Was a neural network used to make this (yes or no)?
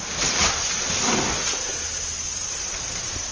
no